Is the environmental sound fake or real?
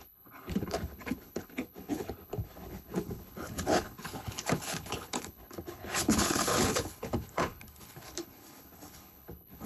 fake